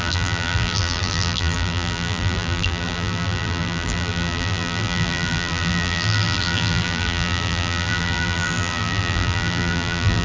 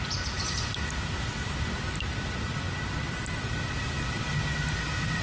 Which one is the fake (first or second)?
first